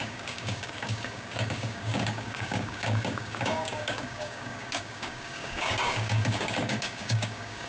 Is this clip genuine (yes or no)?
no